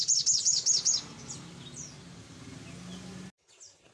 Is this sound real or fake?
real